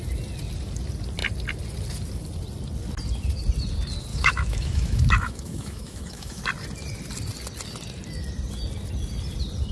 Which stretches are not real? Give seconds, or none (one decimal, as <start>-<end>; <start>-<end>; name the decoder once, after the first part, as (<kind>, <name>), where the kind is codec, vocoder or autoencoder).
4.1-6.4 (autoencoder, DAC-VAE)